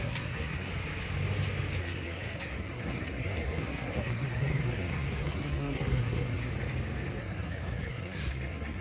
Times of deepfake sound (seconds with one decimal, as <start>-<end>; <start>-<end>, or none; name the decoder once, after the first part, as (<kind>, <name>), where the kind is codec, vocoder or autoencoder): 0.0-0.7 (codec, SNAC); 1.8-6.5; 7.2-8.8

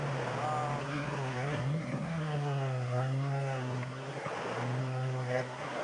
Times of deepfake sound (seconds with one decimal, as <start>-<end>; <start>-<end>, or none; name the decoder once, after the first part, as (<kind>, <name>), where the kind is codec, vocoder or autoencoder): 0.8-4.3 (codec, SNAC); 4.8-5.8

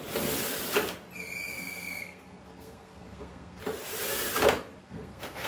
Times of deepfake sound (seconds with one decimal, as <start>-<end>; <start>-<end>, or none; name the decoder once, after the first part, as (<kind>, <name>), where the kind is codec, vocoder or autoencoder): 1.5-3.6 (codec, SNAC); 4.8-5.5

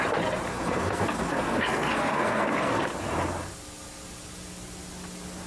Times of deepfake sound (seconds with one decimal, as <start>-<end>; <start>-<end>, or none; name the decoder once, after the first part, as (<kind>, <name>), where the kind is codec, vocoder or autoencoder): 0.5-2.8 (codec, SNAC)

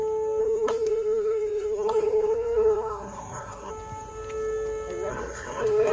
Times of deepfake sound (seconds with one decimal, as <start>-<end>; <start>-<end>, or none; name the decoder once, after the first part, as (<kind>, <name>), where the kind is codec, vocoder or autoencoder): 0.4-3.7 (codec, SNAC); 5.1-5.9

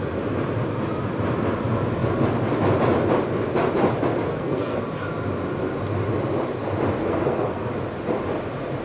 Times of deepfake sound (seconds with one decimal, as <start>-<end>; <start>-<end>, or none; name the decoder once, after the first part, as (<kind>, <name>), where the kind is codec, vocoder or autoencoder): 4.3-4.8 (codec, SNAC); 7.0-7.7

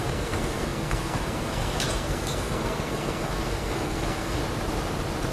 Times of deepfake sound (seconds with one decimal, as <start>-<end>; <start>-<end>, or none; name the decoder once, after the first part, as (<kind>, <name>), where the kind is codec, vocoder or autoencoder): 0.0-4.4 (codec, SNAC)

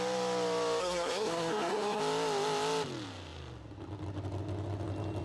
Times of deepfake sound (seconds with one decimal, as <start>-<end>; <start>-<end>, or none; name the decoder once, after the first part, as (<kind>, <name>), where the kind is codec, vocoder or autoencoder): 0.8-2.0 (codec, SNAC)